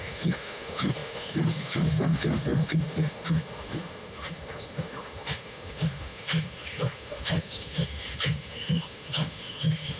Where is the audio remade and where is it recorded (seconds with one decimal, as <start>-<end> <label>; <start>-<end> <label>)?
0.0-10.0 remade